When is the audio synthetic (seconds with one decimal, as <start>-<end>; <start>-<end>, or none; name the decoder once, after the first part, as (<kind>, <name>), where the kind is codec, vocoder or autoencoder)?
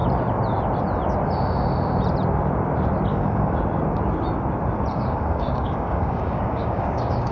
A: 3.1-3.6 (codec, DAC); 4.9-7.3